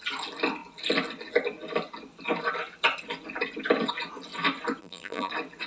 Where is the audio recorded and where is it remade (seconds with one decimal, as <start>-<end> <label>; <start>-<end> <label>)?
0.0-4.8 recorded; 4.8-5.3 remade; 5.3-5.7 recorded